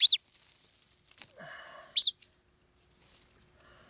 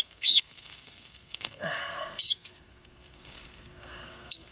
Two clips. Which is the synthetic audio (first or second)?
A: second